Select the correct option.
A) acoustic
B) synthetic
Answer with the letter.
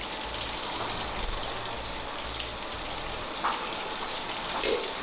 A